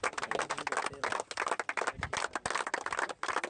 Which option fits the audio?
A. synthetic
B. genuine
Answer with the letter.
B